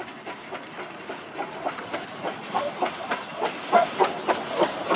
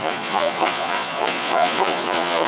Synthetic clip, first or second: second